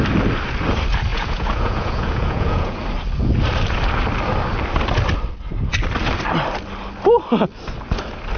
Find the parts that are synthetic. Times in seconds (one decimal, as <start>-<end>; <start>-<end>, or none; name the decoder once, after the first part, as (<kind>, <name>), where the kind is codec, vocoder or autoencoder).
1.1-2.8 (vocoder, Vocos)